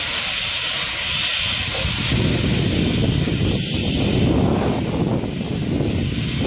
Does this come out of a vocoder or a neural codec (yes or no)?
no